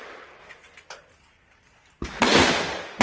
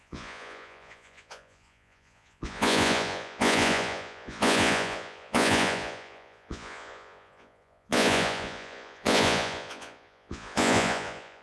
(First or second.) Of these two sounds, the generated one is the second